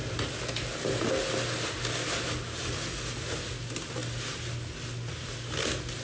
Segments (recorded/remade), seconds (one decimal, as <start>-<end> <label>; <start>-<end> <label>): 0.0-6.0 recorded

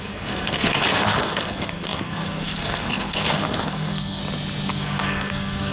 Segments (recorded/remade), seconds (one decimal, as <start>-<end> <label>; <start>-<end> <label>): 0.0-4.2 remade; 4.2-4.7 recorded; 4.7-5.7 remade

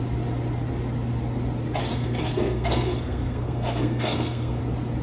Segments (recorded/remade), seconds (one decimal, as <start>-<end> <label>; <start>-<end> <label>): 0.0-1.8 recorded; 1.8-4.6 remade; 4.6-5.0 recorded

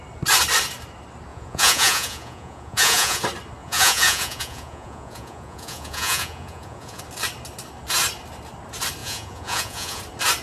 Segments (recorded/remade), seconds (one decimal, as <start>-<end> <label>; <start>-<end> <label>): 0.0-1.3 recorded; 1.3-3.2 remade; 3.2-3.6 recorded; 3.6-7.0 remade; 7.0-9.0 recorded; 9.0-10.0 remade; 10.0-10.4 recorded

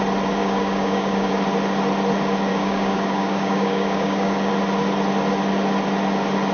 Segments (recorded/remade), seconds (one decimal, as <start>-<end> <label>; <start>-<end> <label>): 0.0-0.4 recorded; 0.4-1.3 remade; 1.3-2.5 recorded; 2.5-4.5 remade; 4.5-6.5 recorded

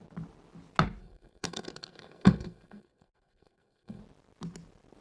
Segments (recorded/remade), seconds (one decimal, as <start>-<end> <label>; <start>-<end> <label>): 0.0-1.0 recorded; 1.0-4.0 remade; 4.0-5.0 recorded

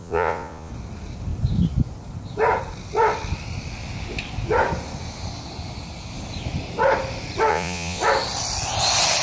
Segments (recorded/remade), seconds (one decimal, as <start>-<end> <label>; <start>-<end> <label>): 0.0-0.7 remade; 0.7-7.5 recorded; 7.5-8.0 remade; 8.0-9.2 recorded

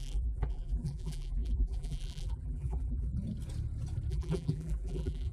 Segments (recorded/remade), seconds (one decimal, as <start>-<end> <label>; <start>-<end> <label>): 0.0-3.1 remade; 3.1-4.1 recorded; 4.1-5.3 remade